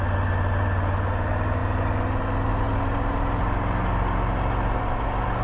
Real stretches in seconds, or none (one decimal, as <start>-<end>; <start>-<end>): 0.0-5.4

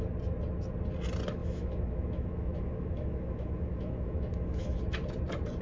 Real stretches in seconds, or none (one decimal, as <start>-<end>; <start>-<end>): 0.0-1.4; 4.8-5.6

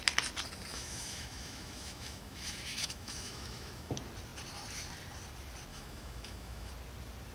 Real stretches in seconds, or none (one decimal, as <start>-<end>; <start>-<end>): 0.0-0.7; 3.9-5.7; 6.7-7.3

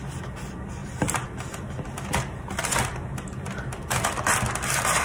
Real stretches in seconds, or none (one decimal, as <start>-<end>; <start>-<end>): 0.0-5.0

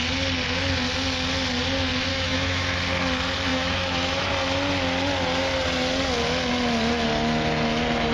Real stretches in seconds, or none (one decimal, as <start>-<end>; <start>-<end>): 0.0-2.1; 2.8-3.5; 4.3-8.1

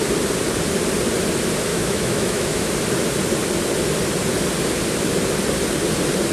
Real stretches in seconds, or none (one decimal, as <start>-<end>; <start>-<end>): 0.0-1.7; 2.7-6.3

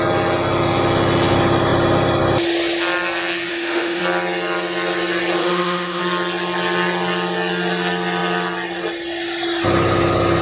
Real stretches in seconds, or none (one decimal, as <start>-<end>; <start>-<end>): 0.0-3.5; 4.0-5.4; 6.0-10.4

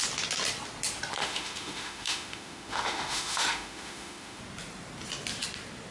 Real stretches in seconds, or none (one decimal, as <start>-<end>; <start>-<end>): 0.0-1.2; 4.4-5.9